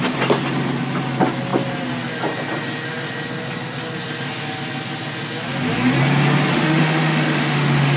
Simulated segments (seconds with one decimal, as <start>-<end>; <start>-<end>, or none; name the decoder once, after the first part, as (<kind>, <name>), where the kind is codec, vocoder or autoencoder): 6.5-8.0 (autoencoder, DAC-VAE)